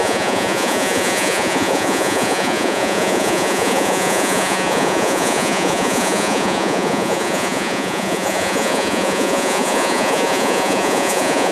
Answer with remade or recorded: remade